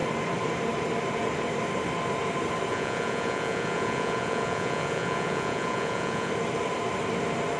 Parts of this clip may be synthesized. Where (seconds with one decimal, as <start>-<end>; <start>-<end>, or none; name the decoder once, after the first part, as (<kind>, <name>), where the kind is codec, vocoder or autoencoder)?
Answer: 2.7-6.3 (vocoder, Vocos)